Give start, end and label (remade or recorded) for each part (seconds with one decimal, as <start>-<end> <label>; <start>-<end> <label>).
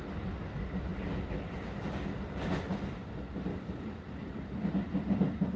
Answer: 0.0-3.5 recorded; 3.5-4.6 remade; 4.6-5.6 recorded